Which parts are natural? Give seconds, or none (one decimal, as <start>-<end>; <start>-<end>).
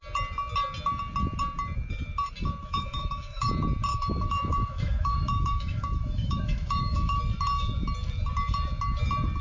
0.0-2.6; 3.5-3.9; 7.2-9.4